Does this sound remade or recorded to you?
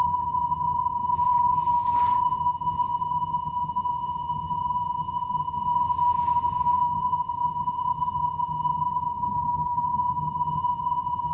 remade